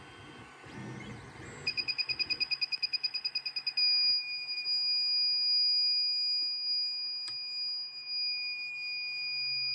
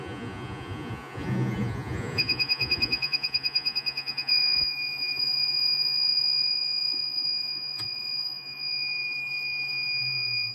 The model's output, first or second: second